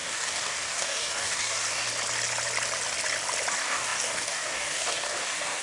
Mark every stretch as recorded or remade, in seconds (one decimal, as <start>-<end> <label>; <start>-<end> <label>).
0.0-1.9 remade; 1.9-3.5 recorded; 3.5-5.6 remade